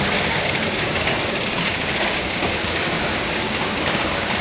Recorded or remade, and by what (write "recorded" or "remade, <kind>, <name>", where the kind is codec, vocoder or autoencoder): remade, codec, DAC